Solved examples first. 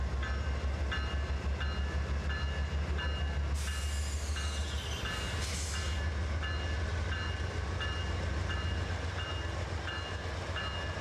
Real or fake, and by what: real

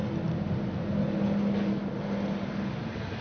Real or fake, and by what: real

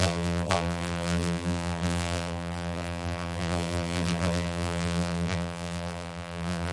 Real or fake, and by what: fake, vocoder, BigVGAN v2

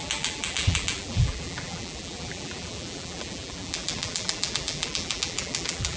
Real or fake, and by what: fake, vocoder, BigVGAN v2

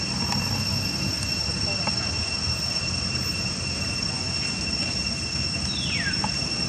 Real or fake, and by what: real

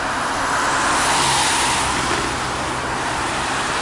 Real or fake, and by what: fake, vocoder, BigVGAN v2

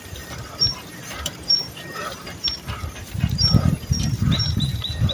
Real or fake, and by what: fake, vocoder, BigVGAN v2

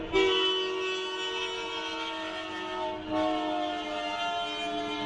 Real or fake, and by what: real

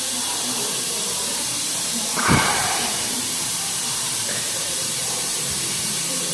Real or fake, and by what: fake, vocoder, BigVGAN v2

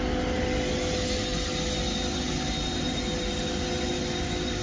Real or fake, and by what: real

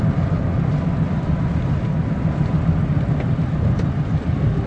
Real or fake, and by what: real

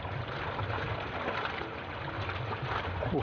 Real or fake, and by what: real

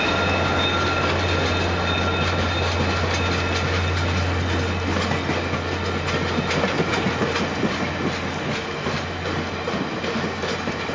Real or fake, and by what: real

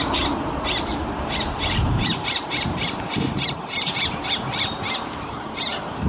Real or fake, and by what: fake, vocoder, BigVGAN v2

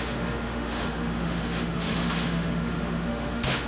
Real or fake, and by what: fake, autoencoder, DAC-VAE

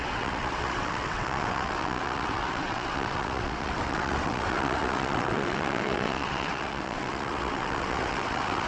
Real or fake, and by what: fake, vocoder, WaveNeXt